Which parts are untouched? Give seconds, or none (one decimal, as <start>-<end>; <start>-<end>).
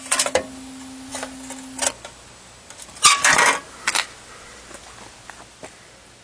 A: 0.0-6.2